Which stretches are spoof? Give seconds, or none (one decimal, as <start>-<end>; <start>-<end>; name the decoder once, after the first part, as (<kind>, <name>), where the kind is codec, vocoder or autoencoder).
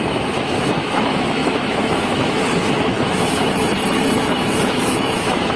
0.0-5.6 (autoencoder, DAC-VAE)